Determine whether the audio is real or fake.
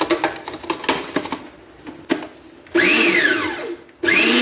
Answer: real